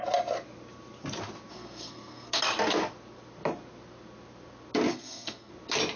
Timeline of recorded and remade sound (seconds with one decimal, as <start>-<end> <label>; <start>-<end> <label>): 0.0-1.5 recorded; 1.5-2.4 remade; 2.4-4.9 recorded; 4.9-5.5 remade; 5.5-6.0 recorded